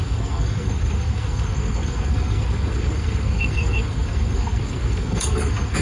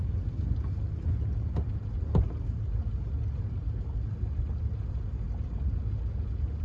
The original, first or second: second